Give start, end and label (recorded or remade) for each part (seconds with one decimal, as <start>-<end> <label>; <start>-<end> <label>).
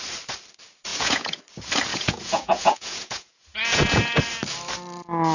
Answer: 0.0-0.9 recorded; 0.9-1.4 remade; 1.4-1.9 recorded; 1.9-4.2 remade; 4.2-5.3 recorded